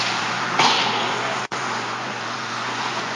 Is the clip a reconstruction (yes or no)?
yes